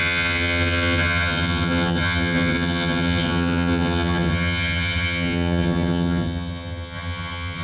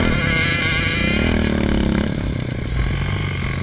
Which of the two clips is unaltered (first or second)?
second